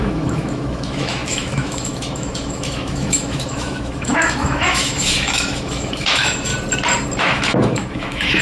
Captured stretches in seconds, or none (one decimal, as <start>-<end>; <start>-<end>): 6.5-7.2